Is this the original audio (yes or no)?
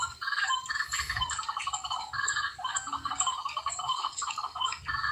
no